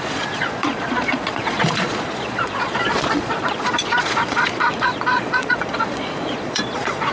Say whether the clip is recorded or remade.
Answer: remade